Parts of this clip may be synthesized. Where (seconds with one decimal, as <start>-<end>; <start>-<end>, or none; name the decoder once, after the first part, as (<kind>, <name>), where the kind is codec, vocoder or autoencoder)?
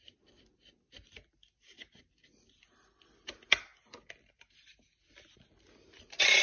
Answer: 0.0-3.7 (vocoder, BigVGAN v2)